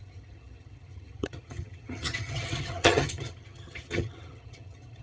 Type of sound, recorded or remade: remade